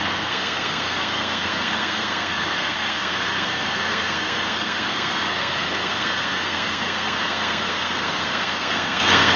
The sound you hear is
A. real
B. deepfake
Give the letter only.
B